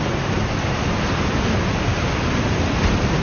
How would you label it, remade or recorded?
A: recorded